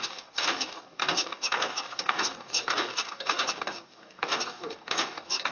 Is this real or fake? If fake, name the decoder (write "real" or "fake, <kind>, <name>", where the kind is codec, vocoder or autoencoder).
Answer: fake, codec, DAC